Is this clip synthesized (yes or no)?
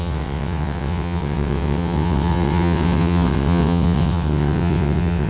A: yes